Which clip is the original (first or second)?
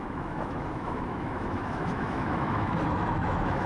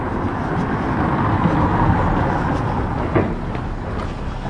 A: second